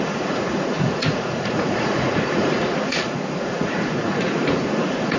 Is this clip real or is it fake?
fake